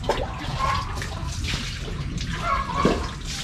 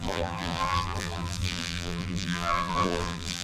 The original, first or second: first